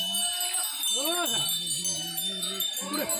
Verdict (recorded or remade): recorded